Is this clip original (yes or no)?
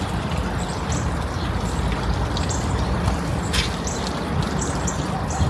yes